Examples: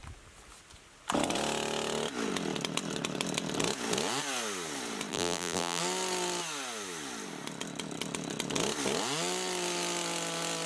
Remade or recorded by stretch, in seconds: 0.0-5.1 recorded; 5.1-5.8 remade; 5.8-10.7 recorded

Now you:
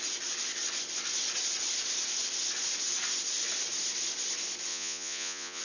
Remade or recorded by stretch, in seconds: 0.0-4.7 recorded; 4.7-5.6 remade

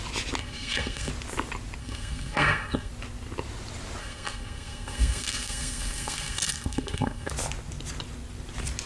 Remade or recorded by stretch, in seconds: 0.0-0.4 recorded; 0.4-1.1 remade; 1.1-1.8 recorded; 1.8-2.9 remade; 2.9-4.0 recorded; 4.0-7.3 remade; 7.3-8.9 recorded

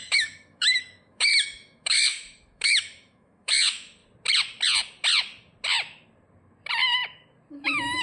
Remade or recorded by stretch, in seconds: 0.0-4.0 remade; 4.0-7.5 recorded; 7.5-8.0 remade

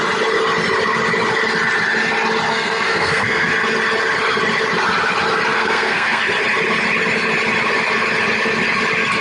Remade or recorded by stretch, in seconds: 0.0-2.5 recorded; 2.5-3.5 remade; 3.5-5.5 recorded; 5.5-6.2 remade; 6.2-9.2 recorded